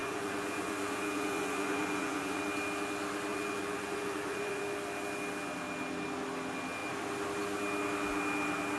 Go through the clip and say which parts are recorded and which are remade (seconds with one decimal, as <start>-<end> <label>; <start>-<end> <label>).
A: 0.0-2.4 remade; 2.4-3.3 recorded; 3.3-4.6 remade; 4.6-8.8 recorded